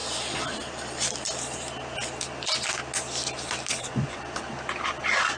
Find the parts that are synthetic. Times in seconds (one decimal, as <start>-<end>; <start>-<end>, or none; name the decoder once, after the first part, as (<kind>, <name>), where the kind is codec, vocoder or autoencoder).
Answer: 3.7-4.2 (vocoder, Vocos)

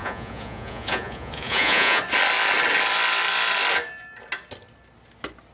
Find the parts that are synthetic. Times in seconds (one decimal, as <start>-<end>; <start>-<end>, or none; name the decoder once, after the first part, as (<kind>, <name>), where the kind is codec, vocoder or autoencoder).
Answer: 0.0-2.0 (vocoder, Vocos)

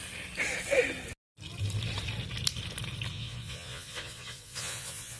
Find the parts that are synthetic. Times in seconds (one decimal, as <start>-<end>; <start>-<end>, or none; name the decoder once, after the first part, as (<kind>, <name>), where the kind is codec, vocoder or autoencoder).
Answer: 3.1-5.2 (vocoder, Vocos)

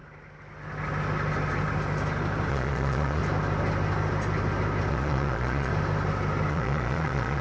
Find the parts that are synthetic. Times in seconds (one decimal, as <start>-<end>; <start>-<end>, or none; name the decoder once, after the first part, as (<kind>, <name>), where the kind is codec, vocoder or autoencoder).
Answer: 2.5-3.2 (vocoder, Vocos); 4.9-5.7; 6.5-7.4

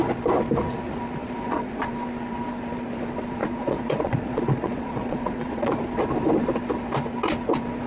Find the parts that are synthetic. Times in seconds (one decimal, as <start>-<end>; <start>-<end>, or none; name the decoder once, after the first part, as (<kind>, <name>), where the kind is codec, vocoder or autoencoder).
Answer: 1.2-1.9 (vocoder, Vocos); 3.4-5.8

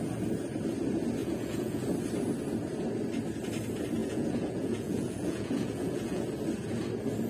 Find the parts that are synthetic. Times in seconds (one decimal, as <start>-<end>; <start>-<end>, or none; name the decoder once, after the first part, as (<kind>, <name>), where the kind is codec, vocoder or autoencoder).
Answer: 1.2-1.8 (vocoder, Vocos); 4.0-6.2